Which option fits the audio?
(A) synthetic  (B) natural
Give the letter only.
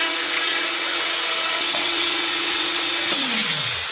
A